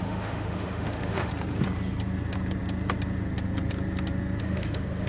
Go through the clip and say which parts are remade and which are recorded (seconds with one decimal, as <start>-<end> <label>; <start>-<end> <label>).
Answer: 0.0-1.3 remade; 1.3-4.4 recorded; 4.4-5.1 remade